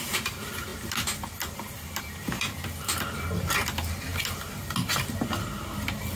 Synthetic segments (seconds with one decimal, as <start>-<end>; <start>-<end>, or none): none